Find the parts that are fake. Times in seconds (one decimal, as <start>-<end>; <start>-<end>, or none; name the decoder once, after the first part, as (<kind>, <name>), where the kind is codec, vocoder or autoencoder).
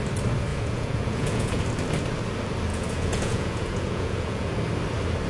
0.5-1.6 (vocoder, Vocos); 2.7-4.6